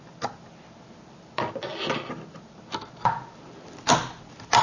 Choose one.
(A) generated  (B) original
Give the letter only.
B